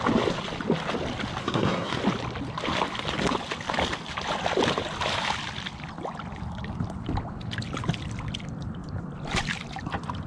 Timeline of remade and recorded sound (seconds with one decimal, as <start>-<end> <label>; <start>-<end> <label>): 0.0-1.4 recorded; 1.4-2.0 remade; 2.0-10.3 recorded